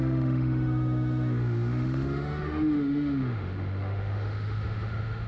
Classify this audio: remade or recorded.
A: remade